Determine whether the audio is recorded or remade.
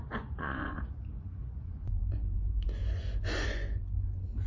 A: remade